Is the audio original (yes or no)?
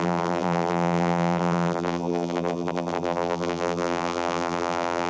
no